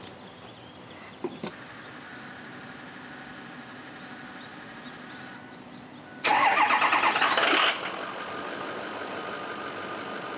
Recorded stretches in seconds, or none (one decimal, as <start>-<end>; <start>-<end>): 0.0-10.4